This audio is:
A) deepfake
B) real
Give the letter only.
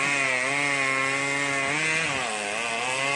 B